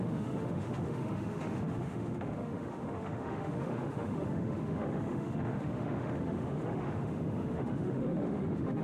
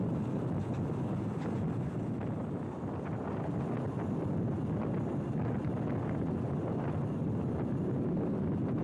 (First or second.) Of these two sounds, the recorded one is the second